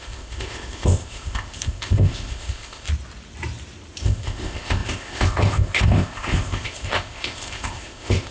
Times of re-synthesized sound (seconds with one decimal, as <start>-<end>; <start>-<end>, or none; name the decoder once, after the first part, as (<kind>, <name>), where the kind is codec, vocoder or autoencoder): 0.0-2.9 (codec, ZipCodec); 4.0-8.3